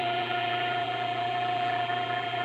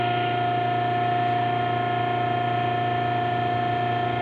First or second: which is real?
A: second